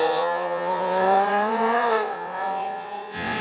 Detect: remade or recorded remade